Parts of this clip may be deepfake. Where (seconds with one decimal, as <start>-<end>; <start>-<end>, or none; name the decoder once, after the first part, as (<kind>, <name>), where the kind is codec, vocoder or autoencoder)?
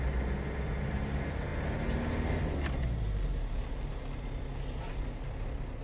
none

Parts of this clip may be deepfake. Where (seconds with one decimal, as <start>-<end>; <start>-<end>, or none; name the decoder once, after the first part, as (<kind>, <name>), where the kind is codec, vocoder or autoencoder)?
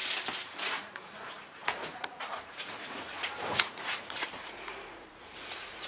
0.6-5.9 (vocoder, Vocos)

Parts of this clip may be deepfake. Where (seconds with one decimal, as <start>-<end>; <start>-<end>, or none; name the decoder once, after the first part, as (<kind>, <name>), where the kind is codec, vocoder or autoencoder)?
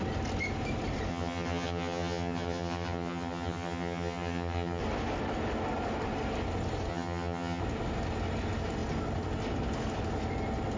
1.1-4.8 (vocoder, HiFi-GAN); 6.9-7.6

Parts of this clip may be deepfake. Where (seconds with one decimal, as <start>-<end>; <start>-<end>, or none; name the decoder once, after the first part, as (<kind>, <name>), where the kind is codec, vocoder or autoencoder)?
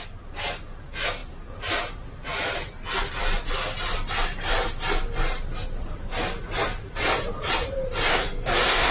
8.1-8.9 (codec, SNAC)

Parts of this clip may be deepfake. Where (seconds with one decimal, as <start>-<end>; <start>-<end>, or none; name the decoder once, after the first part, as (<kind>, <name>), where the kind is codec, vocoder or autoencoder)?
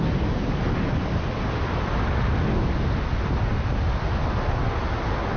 none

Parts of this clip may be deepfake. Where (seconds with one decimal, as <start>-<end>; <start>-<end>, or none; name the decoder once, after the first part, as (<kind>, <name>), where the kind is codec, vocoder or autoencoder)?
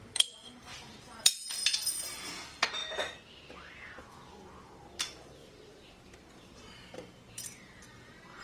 0.0-2.8 (vocoder, BigVGAN v2); 4.0-8.4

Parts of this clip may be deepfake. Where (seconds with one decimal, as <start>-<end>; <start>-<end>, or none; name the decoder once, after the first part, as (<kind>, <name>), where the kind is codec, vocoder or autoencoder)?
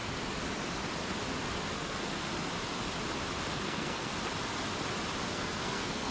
1.7-2.3 (codec, SNAC); 3.5-4.1; 5.3-6.1